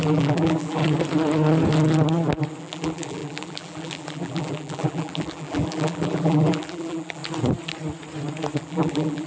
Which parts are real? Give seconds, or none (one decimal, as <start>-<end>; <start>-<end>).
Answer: 0.8-2.6; 7.2-8.6